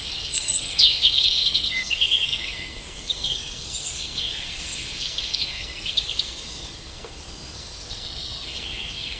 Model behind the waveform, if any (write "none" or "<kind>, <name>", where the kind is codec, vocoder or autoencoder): codec, SNAC